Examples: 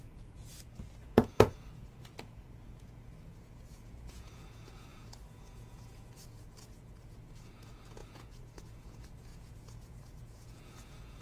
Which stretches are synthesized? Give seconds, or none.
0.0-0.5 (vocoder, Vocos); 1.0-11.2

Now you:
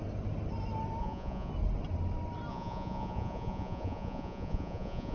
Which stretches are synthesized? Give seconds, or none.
1.0-1.5 (vocoder, Vocos); 2.5-5.1

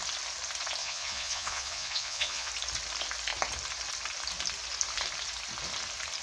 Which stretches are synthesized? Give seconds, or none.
0.8-2.5 (vocoder, Vocos)